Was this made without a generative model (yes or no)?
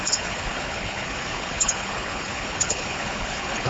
no